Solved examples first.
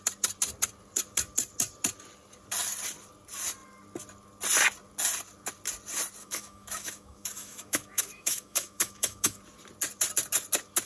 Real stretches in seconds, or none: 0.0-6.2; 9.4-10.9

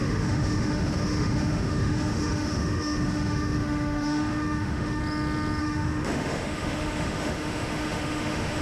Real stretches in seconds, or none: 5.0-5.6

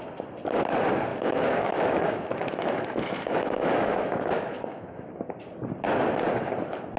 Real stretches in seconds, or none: 0.0-1.1; 5.1-7.0

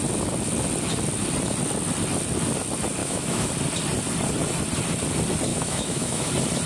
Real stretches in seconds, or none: 0.0-3.0; 3.5-5.5; 6.3-6.7

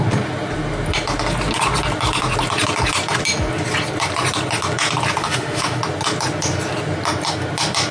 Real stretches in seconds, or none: 0.0-5.2; 5.8-7.9

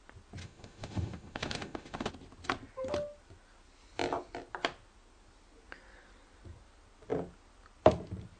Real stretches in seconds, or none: 0.0-0.4; 2.1-8.4